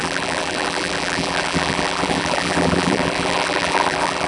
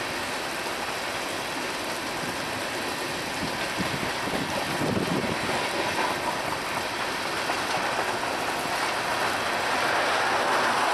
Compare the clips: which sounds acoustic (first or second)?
second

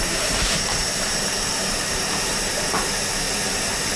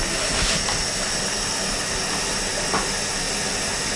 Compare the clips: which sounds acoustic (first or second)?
second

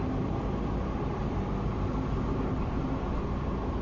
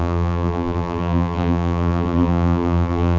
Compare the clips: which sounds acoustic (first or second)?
first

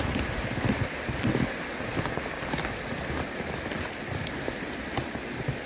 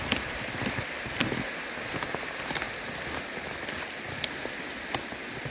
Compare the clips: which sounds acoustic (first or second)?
second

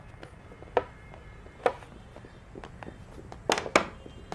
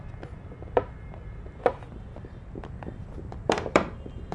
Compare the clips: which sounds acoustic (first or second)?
first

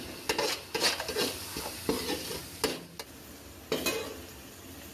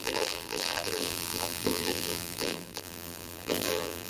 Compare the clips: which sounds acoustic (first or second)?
first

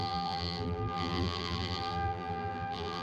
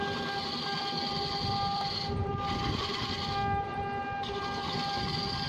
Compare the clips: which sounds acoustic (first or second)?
second